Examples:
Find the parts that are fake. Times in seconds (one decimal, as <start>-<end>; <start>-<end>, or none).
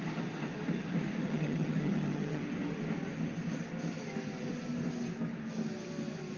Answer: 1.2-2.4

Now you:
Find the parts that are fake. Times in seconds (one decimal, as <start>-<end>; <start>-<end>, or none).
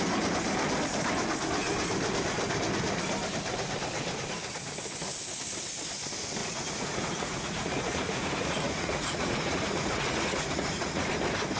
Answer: 6.4-11.1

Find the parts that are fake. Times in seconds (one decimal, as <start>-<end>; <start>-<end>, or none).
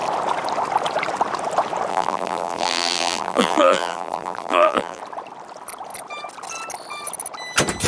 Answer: 1.9-5.0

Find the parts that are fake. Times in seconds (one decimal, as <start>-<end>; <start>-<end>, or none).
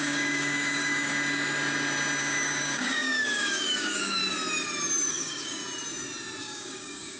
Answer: 0.0-1.1; 2.2-4.2; 5.1-5.6; 6.4-7.2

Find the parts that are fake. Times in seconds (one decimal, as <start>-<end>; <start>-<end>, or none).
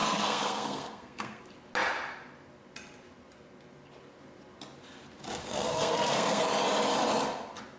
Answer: 0.0-1.4; 5.4-6.4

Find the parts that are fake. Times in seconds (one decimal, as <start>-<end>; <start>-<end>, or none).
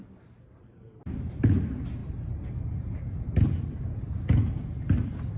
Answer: 2.0-4.5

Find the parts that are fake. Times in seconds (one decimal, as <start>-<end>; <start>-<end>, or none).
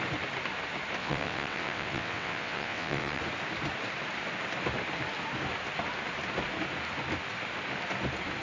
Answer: 1.0-3.2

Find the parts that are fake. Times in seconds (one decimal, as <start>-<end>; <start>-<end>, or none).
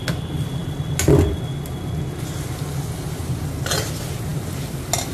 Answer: none